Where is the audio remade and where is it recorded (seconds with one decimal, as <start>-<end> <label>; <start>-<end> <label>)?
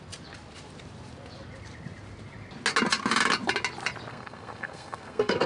0.0-4.1 recorded; 4.1-5.5 remade